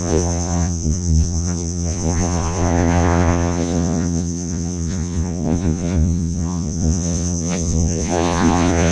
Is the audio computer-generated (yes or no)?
yes